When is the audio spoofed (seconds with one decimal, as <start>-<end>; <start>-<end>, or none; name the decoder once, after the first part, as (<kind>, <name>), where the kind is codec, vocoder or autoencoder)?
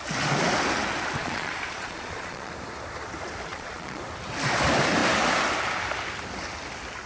1.2-2.5 (vocoder, Vocos); 3.5-4.0